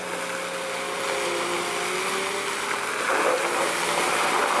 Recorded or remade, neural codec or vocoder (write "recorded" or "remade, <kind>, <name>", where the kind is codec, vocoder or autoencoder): recorded